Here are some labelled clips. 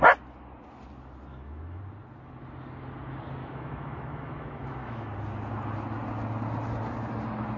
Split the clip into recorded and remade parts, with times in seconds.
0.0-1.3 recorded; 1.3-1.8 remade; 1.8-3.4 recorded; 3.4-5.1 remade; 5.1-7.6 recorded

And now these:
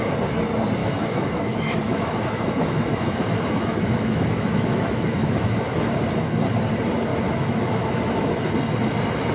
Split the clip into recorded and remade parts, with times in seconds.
0.0-0.8 recorded; 0.8-5.9 remade; 5.9-7.1 recorded; 7.1-8.5 remade; 8.5-9.3 recorded